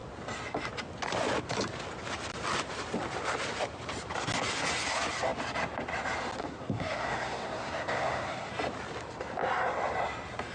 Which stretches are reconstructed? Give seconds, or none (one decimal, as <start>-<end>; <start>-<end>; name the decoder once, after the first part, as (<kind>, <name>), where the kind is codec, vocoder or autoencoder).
6.4-8.5 (codec, SNAC)